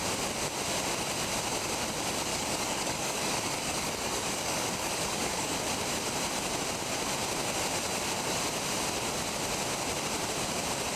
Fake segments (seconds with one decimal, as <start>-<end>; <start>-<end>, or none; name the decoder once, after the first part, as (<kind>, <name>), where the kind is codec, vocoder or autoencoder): 2.3-5.6 (codec, DAC)